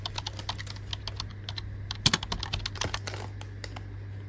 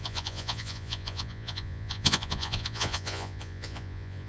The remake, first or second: second